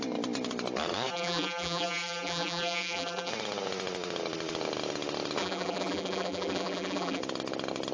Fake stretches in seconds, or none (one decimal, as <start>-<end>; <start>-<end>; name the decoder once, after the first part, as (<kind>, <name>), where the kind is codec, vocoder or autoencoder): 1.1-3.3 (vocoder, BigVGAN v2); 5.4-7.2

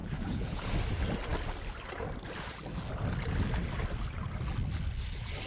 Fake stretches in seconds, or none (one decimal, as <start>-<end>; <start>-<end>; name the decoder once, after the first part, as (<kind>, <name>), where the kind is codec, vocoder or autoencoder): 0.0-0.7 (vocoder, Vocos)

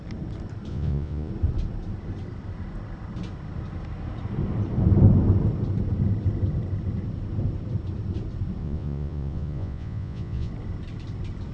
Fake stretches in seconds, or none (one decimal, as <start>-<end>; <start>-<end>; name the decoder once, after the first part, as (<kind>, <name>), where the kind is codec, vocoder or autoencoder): 0.7-1.3 (vocoder, Vocos); 8.6-10.5

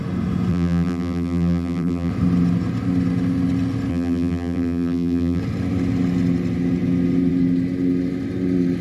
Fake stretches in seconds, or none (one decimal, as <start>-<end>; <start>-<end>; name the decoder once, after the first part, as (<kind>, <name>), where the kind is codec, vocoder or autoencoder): 0.5-2.1 (vocoder, BigVGAN v2); 3.9-5.4